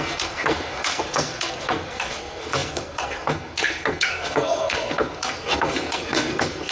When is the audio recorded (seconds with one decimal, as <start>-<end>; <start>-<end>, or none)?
none